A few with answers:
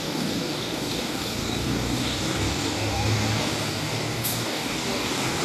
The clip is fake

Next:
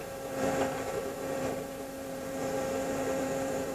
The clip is fake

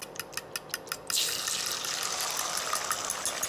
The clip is real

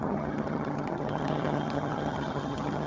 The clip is fake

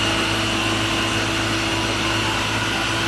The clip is real